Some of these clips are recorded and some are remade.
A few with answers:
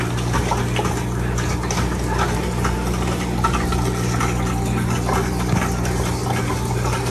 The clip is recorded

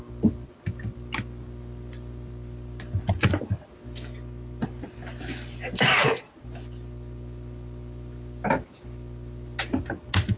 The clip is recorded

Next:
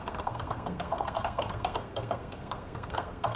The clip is remade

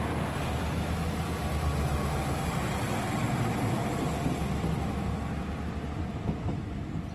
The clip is recorded